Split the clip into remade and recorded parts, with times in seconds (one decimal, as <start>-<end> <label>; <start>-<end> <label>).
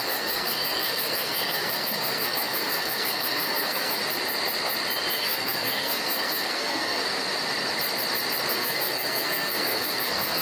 0.0-4.0 remade; 4.0-5.1 recorded; 5.1-7.0 remade; 7.0-8.5 recorded; 8.5-10.4 remade